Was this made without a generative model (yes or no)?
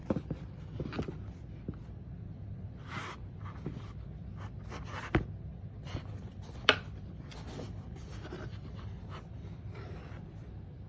yes